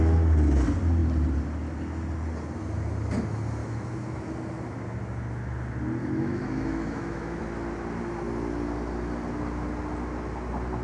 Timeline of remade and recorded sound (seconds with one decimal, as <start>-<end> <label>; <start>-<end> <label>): 0.0-3.6 recorded; 3.6-4.3 remade; 4.3-6.0 recorded; 6.0-7.4 remade; 7.4-10.8 recorded